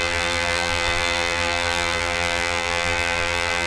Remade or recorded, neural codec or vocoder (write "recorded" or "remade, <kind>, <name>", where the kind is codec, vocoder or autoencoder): remade, vocoder, BigVGAN v2